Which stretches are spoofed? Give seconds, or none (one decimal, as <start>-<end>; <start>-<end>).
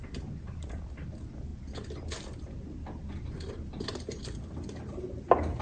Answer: none